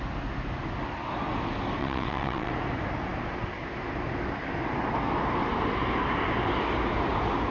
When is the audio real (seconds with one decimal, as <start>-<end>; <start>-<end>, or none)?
0.0-1.8; 2.5-7.5